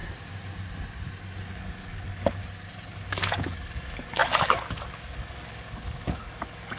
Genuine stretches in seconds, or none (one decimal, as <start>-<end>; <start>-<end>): 0.0-1.5; 2.4-2.9

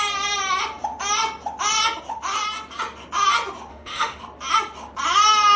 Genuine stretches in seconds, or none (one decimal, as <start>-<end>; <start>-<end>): 0.0-3.7; 4.2-5.6

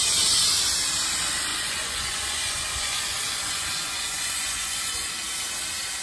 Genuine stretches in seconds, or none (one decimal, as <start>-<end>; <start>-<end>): 0.0-1.5; 5.1-6.0

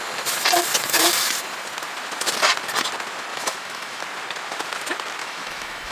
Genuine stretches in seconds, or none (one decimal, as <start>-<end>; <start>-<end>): 0.0-3.3; 4.0-5.2

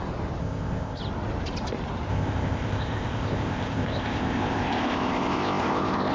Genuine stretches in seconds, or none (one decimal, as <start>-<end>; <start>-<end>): 0.0-0.4; 1.0-2.1

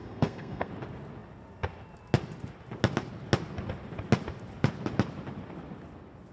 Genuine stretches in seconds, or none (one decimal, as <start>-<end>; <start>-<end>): 0.7-6.3

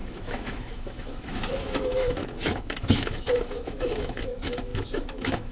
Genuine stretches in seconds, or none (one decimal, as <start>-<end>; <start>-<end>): none

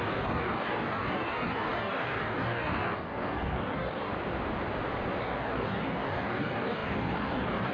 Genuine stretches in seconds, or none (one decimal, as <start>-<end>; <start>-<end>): 4.1-5.2